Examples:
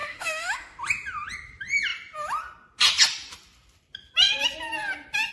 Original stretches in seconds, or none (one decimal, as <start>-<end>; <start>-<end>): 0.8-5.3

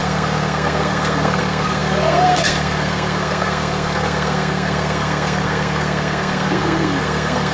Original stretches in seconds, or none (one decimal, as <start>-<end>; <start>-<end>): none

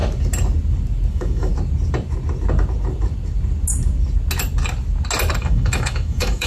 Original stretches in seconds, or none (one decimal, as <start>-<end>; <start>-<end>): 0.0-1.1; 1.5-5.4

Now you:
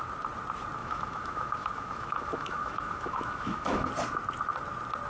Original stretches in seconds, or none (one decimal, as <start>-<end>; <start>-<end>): 0.0-0.8; 3.9-5.1

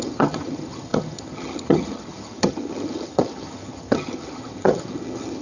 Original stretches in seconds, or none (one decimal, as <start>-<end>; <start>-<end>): none

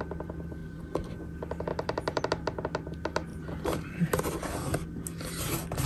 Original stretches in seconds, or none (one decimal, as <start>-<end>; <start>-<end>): 0.0-0.6; 1.2-1.7; 2.2-3.3; 4.2-5.9